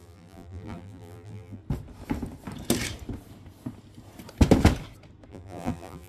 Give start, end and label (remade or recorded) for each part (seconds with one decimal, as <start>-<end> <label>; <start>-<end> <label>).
0.0-1.6 remade; 1.6-5.3 recorded; 5.3-6.1 remade